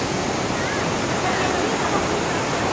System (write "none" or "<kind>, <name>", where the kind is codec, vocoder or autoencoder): none